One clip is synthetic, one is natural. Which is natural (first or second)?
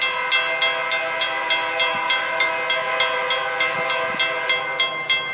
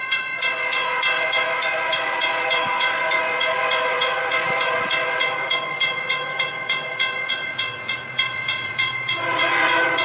first